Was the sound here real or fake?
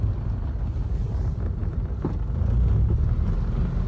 real